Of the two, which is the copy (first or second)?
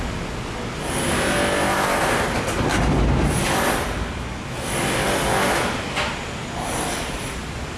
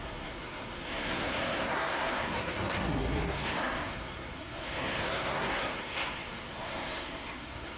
second